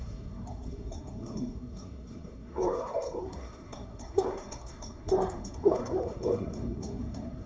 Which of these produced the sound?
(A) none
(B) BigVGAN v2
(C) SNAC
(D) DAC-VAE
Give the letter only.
C